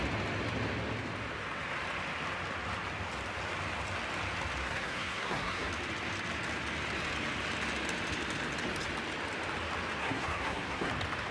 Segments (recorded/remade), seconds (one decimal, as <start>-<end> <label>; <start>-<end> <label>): 0.0-4.6 recorded; 4.6-5.7 remade; 5.7-10.0 recorded; 10.0-10.9 remade; 10.9-11.3 recorded